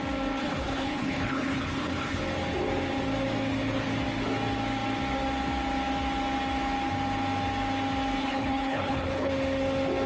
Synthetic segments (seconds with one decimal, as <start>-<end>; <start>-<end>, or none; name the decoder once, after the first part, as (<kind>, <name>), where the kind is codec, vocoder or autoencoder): 0.4-2.2 (codec, HILCodec); 8.2-9.3

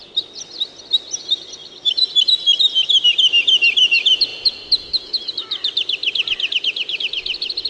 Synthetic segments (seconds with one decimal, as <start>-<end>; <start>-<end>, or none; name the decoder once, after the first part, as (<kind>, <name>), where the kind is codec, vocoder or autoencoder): 1.6-2.1 (vocoder, BigVGAN v2); 6.0-7.0

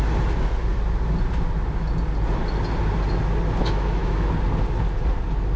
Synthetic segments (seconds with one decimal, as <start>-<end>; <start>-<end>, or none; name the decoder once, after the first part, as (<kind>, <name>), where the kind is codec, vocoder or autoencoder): 3.6-4.3 (autoencoder, DAC-VAE)

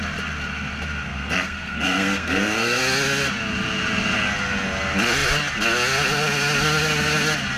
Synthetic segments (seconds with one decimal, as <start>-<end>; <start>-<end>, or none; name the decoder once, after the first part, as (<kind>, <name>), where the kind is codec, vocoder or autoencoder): 1.1-2.8 (codec, SNAC)

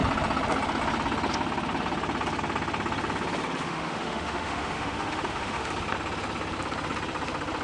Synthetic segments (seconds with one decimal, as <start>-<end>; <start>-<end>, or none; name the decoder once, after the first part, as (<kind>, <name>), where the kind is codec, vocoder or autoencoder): 3.6-5.7 (autoencoder, DAC-VAE)

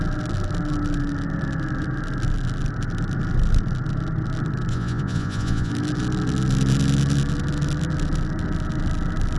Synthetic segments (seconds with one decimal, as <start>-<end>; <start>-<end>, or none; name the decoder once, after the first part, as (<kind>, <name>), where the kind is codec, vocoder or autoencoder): 4.7-5.7 (vocoder, Vocos)

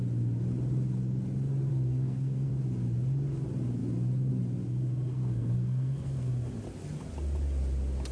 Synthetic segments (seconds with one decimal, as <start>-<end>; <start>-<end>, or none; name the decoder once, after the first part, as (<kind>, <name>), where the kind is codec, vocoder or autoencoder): 1.7-2.5 (codec, SNAC); 5.1-6.3